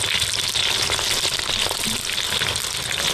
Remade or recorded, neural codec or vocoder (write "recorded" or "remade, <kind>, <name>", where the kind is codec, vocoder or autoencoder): recorded